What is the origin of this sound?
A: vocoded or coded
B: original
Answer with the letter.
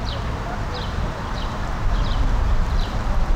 A